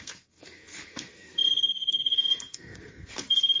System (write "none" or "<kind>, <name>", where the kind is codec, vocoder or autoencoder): codec, SNAC